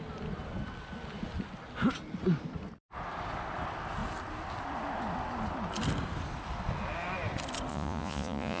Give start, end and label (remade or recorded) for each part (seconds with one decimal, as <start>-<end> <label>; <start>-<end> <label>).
0.0-7.7 recorded; 7.7-8.6 remade

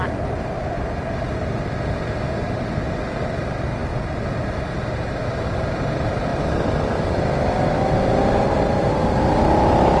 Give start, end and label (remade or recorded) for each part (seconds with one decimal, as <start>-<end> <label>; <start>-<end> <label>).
0.0-10.0 recorded

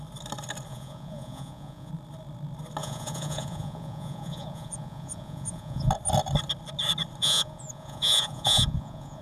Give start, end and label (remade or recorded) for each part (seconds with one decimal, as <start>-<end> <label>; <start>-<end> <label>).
0.0-0.7 recorded; 0.7-1.9 remade; 1.9-2.8 recorded; 2.8-5.9 remade; 5.9-7.2 recorded; 7.2-9.2 remade

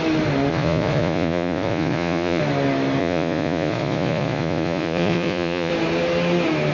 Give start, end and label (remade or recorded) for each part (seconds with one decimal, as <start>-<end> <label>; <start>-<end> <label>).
0.0-0.5 recorded; 0.5-2.4 remade; 2.4-3.0 recorded; 3.0-5.7 remade; 5.7-6.7 recorded

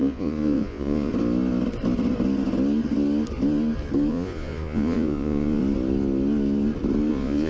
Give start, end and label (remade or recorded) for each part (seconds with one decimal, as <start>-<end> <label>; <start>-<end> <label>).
0.0-1.1 remade; 1.1-4.1 recorded; 4.1-5.6 remade; 5.6-7.1 recorded; 7.1-7.5 remade

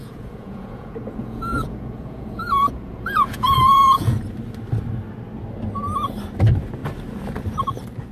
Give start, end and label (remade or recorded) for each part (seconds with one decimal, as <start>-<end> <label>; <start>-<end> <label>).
0.0-4.2 remade; 4.2-8.1 recorded

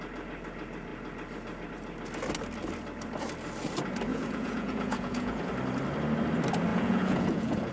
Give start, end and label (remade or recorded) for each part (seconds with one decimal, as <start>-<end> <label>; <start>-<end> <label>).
0.0-4.1 recorded; 4.1-5.4 remade; 5.4-6.7 recorded; 6.7-7.7 remade